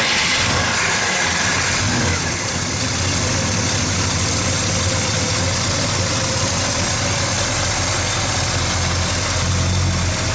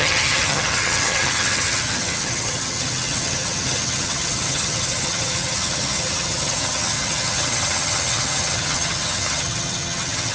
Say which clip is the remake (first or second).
second